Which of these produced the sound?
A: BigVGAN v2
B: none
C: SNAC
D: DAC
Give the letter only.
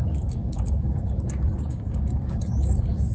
D